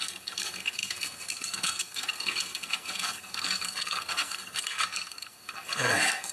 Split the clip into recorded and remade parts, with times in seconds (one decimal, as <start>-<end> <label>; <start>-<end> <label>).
0.0-6.3 remade